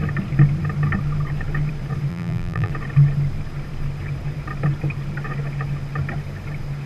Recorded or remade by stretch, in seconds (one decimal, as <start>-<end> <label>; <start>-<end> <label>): 0.0-2.1 recorded; 2.1-2.7 remade; 2.7-6.9 recorded